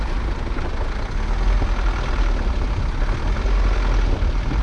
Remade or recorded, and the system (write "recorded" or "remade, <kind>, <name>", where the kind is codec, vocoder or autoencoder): recorded